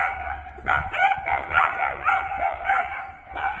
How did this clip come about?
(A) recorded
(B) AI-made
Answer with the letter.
B